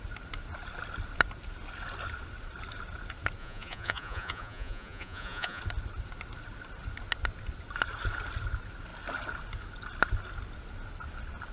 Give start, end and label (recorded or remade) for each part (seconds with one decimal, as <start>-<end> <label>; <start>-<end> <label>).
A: 0.0-3.4 recorded; 3.4-5.6 remade; 5.6-11.5 recorded